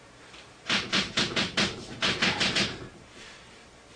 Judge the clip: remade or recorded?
remade